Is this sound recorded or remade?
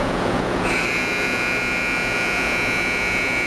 remade